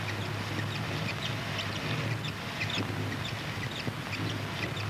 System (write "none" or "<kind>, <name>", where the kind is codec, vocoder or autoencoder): none